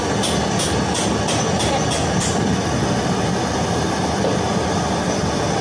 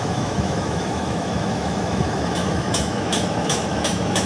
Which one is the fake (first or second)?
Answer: second